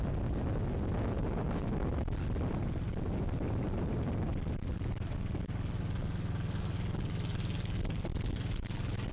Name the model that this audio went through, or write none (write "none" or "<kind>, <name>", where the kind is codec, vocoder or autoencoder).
none